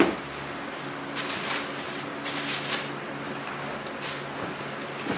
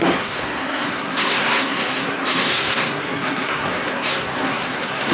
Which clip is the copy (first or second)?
second